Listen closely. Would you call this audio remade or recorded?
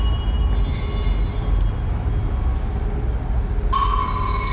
recorded